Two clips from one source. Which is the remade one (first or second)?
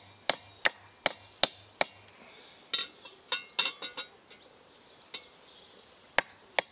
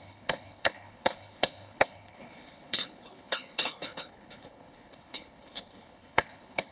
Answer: second